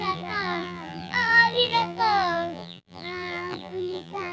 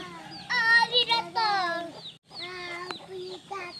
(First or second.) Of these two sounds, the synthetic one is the first